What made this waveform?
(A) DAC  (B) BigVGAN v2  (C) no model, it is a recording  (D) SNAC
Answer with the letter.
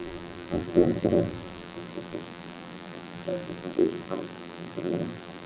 B